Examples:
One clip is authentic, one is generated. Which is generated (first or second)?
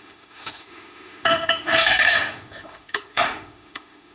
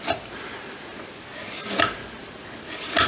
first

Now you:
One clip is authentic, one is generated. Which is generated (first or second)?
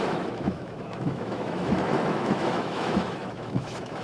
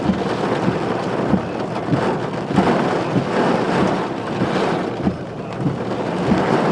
first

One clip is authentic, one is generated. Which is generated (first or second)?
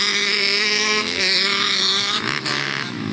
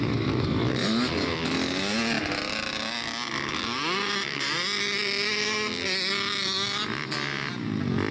first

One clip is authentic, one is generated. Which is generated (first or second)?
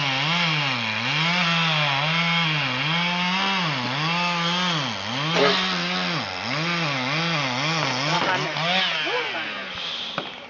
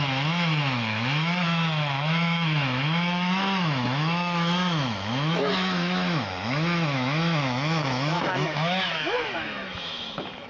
second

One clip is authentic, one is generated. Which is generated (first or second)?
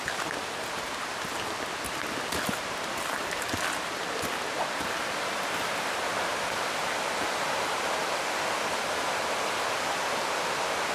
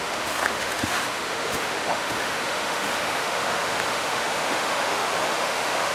second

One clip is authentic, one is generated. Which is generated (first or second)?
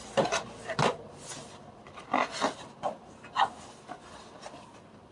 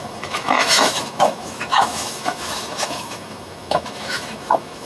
second